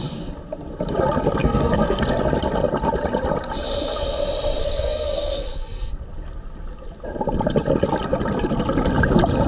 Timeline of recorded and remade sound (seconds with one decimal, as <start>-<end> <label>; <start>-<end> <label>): 0.0-1.4 recorded; 1.4-2.0 remade; 2.0-4.6 recorded; 4.6-6.0 remade; 6.0-9.5 recorded